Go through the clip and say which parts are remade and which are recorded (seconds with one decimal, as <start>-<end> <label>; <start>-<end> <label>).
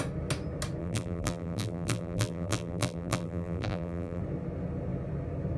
0.0-0.8 recorded; 0.8-4.2 remade; 4.2-5.6 recorded